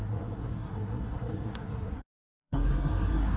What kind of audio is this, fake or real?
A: fake